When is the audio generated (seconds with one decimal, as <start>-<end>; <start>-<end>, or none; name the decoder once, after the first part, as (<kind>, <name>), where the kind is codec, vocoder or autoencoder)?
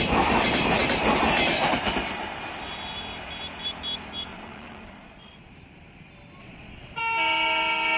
4.3-5.5 (vocoder, Vocos); 6.4-7.0